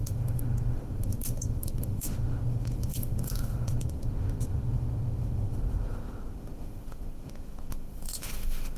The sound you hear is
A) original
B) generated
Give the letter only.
B